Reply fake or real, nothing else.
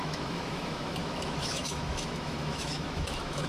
fake